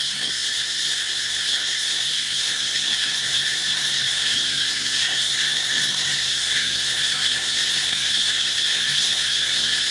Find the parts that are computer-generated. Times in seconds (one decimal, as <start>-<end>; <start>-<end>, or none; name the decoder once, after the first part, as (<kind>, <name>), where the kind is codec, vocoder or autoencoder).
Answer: 0.0-9.9 (codec, SNAC)